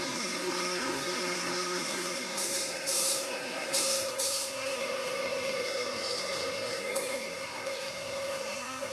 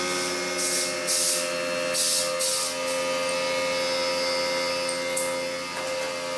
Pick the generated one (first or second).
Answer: first